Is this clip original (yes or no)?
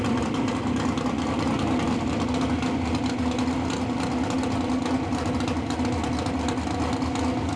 yes